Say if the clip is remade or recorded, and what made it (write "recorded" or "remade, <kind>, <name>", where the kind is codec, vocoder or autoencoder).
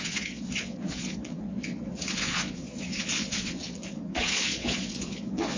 remade, vocoder, Vocos